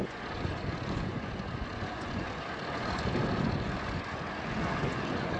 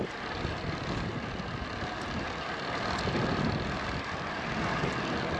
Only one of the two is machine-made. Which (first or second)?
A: first